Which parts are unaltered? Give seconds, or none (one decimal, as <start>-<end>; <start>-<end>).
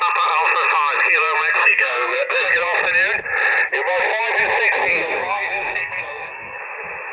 0.0-1.6; 2.5-4.9; 6.6-7.1